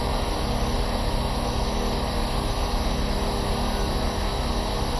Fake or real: real